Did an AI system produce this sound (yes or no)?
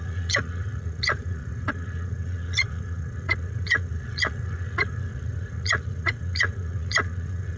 yes